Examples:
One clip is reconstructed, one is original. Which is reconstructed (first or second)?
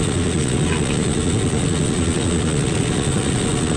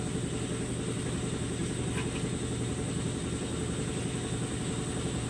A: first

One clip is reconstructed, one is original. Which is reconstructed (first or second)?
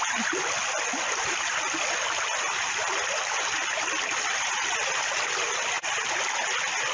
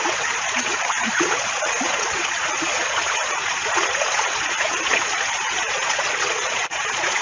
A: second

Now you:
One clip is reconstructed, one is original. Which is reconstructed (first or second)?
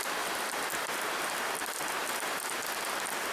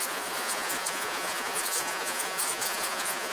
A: second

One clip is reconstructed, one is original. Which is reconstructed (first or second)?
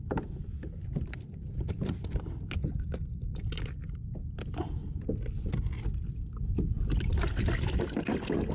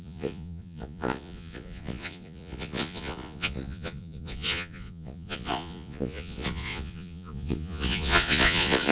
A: second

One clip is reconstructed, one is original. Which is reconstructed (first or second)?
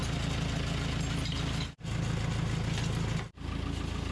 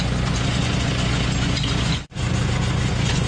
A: second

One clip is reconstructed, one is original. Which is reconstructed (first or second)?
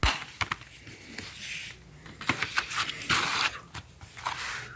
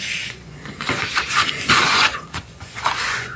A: second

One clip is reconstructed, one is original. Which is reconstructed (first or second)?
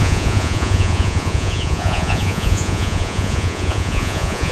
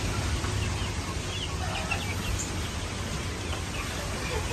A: first